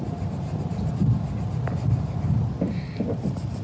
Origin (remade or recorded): recorded